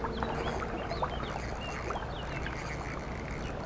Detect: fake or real real